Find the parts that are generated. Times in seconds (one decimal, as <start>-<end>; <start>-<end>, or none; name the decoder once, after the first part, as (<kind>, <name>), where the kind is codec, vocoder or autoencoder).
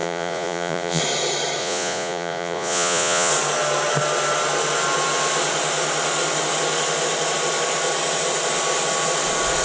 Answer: 0.0-1.0 (vocoder, Vocos); 1.6-3.3